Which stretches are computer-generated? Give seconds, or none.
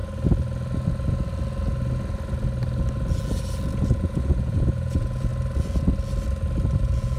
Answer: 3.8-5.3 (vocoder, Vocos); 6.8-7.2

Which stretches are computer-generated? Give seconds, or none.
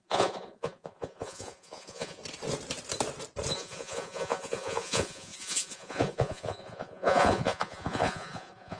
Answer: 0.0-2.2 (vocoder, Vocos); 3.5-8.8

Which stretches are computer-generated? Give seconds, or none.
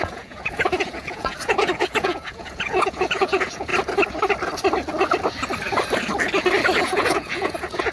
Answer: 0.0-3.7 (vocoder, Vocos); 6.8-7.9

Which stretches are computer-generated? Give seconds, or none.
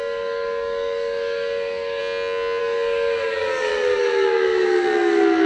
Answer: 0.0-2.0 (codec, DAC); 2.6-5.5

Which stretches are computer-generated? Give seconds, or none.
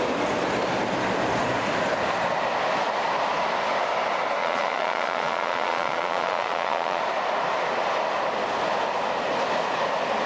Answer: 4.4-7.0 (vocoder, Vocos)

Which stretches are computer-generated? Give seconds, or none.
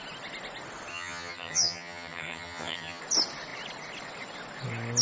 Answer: 0.9-3.0 (vocoder, HiFi-GAN)